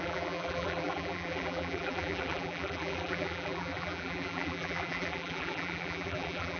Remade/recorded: remade